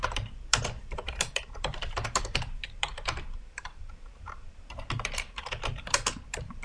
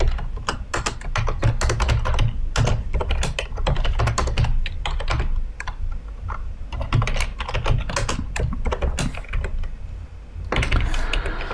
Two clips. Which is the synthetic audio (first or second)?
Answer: first